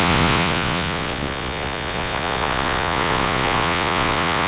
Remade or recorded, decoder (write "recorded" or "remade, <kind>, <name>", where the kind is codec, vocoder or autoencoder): remade, vocoder, Vocos